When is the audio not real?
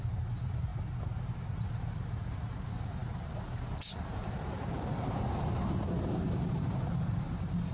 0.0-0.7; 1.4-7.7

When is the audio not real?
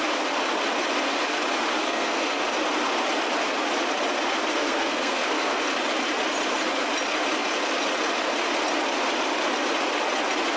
1.8-2.4; 4.5-5.6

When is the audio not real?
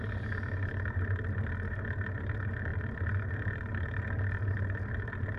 none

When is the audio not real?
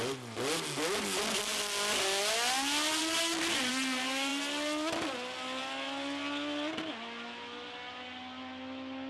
none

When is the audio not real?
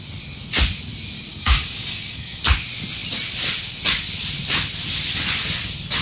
1.3-2.4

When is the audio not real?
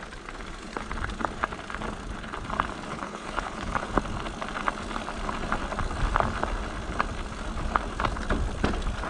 2.9-3.9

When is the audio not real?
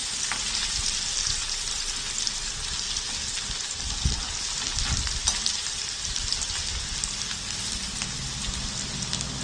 0.0-0.8; 5.6-6.6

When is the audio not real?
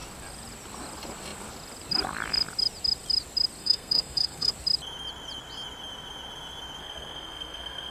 3.6-4.5; 6.8-7.9